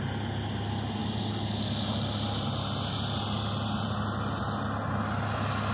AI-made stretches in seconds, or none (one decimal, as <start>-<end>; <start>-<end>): none